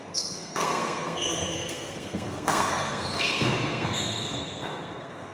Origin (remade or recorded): remade